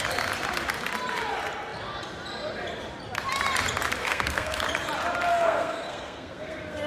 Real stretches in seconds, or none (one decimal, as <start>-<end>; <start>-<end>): 0.0-4.0; 4.6-5.3